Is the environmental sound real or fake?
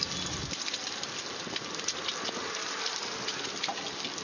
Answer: real